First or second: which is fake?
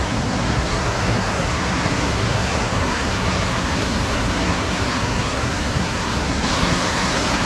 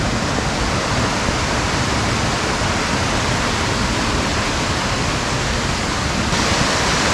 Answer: first